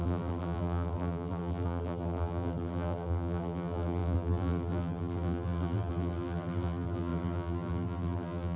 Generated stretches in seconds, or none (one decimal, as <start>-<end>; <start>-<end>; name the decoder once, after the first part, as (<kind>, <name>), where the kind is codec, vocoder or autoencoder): 0.0-8.6 (vocoder, BigVGAN v2)